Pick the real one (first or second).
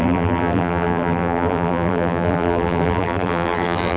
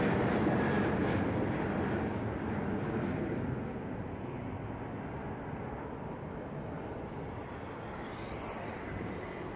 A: second